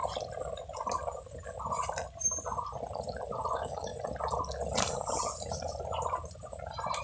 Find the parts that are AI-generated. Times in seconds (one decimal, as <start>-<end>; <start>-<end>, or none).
3.5-3.9